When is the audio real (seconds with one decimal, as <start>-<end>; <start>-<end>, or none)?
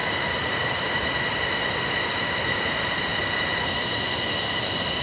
0.0-5.0